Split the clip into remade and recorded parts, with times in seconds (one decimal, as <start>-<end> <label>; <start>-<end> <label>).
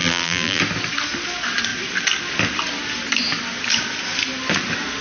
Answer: 0.0-0.6 remade; 0.6-5.0 recorded